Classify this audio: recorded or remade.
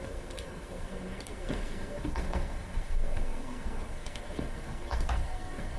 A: remade